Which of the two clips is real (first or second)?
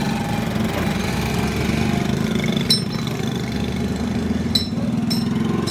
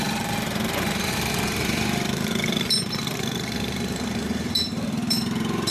first